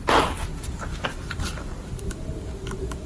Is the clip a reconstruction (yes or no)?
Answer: no